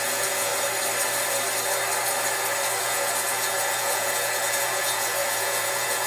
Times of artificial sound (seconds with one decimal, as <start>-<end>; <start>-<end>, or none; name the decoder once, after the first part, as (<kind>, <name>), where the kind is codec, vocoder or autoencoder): 0.0-0.5 (vocoder, Vocos); 2.8-6.1